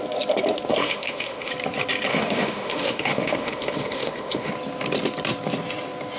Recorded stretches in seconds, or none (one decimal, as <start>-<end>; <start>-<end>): 0.0-0.7; 1.5-2.1; 4.5-6.2